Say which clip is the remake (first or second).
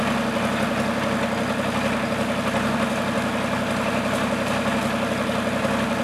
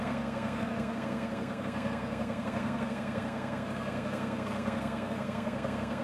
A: second